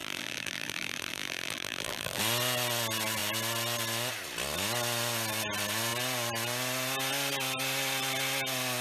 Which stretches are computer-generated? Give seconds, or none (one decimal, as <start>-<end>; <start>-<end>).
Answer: 0.0-2.2

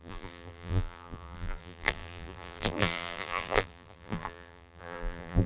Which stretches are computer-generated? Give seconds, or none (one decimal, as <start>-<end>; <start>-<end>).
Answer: 0.0-5.5

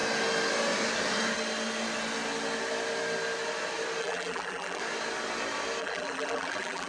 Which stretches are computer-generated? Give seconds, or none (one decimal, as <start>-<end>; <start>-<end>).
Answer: 4.0-4.8; 5.8-6.9

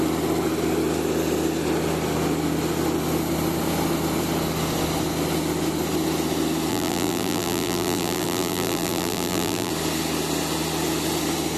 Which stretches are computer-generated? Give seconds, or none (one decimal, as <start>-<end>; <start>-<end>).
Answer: 6.7-9.7

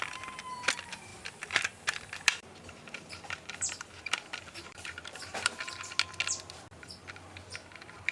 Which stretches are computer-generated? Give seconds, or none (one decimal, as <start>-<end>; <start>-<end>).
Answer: 1.1-5.8

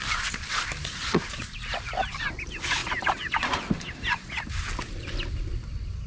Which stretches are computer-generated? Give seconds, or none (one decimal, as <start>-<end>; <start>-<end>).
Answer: 0.0-2.8

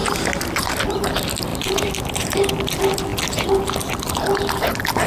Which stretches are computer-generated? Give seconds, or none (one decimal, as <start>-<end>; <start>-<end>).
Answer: 1.5-2.5

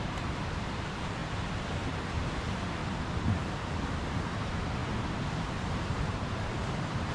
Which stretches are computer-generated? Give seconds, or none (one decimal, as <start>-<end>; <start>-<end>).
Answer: 0.0-2.8; 3.8-7.1